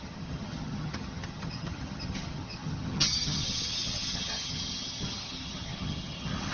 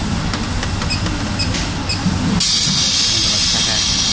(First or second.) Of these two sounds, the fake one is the first